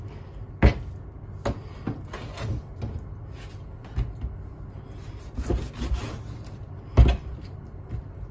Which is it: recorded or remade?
recorded